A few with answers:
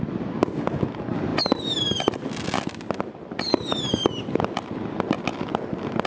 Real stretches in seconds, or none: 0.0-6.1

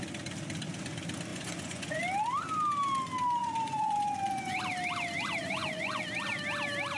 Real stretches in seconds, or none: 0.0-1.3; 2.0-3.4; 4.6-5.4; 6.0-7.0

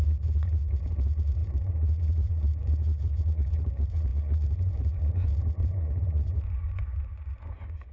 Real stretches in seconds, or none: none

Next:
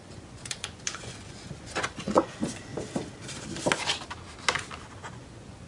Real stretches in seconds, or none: 2.7-5.0

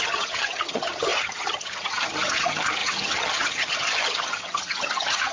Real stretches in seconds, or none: none

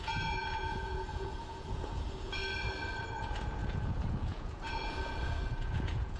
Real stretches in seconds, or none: 2.4-3.0

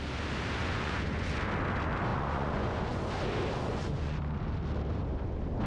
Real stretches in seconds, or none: 0.0-0.6; 1.3-2.1; 3.0-3.7; 4.2-5.7

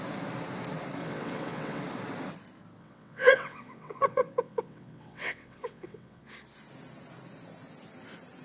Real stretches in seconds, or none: 0.0-1.0; 1.8-2.8; 6.2-8.4